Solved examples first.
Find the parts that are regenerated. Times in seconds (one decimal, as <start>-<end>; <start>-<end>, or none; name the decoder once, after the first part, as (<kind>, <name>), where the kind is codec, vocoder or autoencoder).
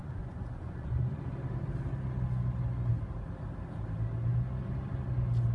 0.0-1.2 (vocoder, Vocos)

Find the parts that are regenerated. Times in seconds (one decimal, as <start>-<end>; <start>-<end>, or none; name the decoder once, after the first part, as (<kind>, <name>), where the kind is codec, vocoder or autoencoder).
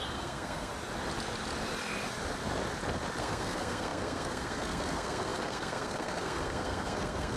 0.0-0.7 (codec, SNAC); 3.2-7.4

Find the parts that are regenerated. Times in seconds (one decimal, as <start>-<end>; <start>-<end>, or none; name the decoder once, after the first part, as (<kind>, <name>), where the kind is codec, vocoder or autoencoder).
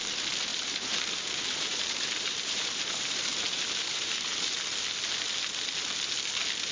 0.5-4.3 (vocoder, BigVGAN v2)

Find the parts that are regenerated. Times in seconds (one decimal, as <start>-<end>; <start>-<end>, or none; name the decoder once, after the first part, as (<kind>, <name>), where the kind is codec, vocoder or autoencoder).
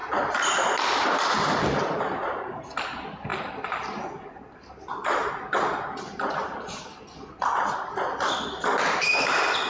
none